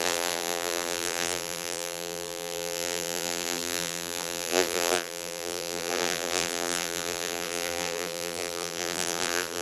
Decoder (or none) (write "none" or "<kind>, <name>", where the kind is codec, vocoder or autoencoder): vocoder, BigVGAN v2